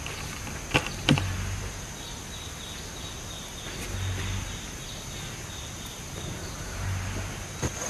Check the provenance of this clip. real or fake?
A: real